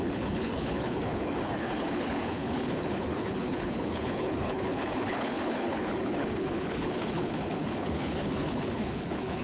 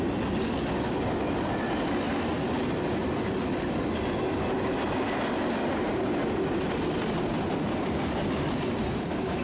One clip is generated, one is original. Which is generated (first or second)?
first